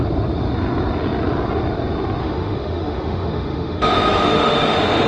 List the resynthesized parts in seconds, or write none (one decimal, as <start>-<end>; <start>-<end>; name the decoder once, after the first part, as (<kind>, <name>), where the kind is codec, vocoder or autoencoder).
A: 2.2-5.1 (autoencoder, DAC-VAE)